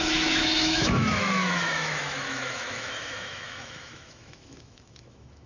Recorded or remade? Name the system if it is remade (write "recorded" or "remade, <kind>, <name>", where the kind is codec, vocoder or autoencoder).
remade, autoencoder, DAC-VAE